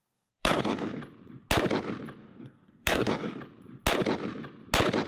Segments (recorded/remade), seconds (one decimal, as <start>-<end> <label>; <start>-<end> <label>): 0.0-1.0 remade; 1.0-2.2 recorded; 2.2-3.4 remade; 3.4-5.1 recorded

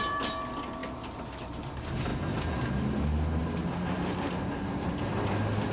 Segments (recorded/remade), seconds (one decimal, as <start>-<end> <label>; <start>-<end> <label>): 0.0-5.7 recorded

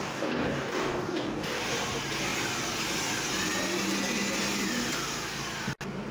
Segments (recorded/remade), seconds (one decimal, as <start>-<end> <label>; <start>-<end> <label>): 0.0-1.6 remade; 1.6-6.1 recorded